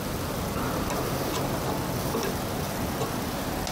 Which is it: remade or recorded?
recorded